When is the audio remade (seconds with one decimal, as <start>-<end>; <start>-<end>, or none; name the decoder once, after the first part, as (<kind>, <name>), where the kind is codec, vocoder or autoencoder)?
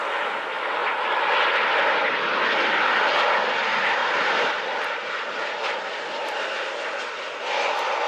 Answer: 4.0-5.1 (vocoder, BigVGAN v2)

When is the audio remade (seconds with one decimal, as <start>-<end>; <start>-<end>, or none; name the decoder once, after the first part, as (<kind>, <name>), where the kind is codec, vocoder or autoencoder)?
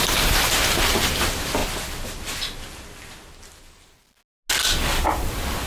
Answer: 0.0-1.6 (vocoder, BigVGAN v2); 5.0-5.7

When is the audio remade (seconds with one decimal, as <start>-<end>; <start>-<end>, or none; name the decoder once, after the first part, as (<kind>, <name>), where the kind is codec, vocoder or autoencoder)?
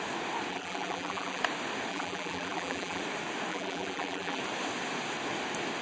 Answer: 0.5-1.4 (vocoder, BigVGAN v2); 1.9-3.0; 3.5-4.4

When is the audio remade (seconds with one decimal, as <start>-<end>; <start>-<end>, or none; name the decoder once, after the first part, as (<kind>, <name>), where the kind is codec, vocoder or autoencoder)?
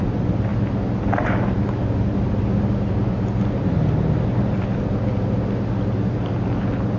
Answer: none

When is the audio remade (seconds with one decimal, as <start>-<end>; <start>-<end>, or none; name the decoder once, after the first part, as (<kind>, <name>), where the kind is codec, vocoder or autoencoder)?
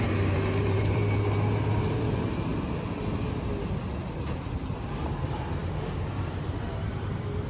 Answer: 0.0-1.0 (vocoder, BigVGAN v2); 1.8-2.5; 3.9-7.5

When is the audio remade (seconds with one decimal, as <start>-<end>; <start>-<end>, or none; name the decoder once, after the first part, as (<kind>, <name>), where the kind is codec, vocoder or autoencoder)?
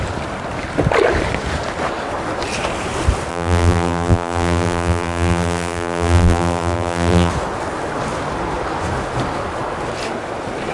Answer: 3.3-7.3 (vocoder, BigVGAN v2)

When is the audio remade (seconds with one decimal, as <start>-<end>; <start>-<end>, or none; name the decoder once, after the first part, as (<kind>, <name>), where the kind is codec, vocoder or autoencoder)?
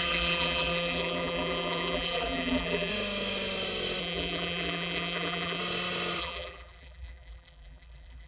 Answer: 0.0-2.9 (vocoder, BigVGAN v2); 4.0-5.6; 6.2-8.3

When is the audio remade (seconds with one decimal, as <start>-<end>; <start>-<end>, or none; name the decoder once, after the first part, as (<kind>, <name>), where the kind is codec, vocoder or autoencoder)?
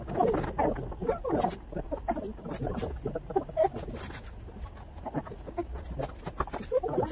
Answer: 1.0-3.8 (vocoder, BigVGAN v2)